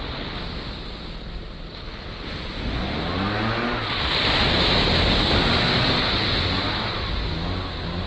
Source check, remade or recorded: recorded